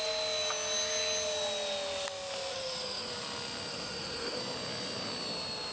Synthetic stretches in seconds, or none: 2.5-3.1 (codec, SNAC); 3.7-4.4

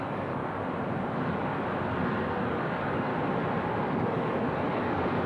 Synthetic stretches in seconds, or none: 0.0-0.4 (codec, DAC); 1.1-1.5; 2.3-3.1; 3.8-5.3

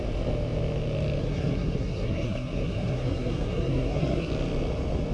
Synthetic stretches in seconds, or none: 1.2-4.3 (codec, SNAC)

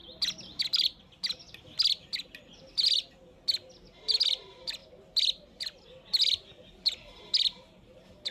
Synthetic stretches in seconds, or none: none

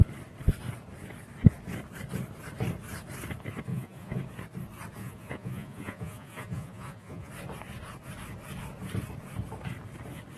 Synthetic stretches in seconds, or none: 3.7-4.2 (vocoder, Vocos); 5.0-7.3

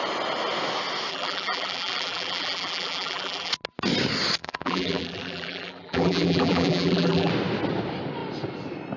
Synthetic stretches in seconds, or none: 1.1-3.5 (vocoder, BigVGAN v2); 4.4-7.3

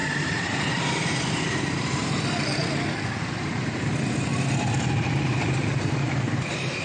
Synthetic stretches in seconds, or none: 0.0-2.6 (vocoder, BigVGAN v2); 3.5-4.3; 5.0-6.8

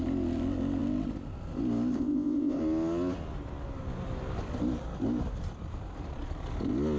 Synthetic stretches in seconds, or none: 1.9-2.6 (codec, ZipCodec)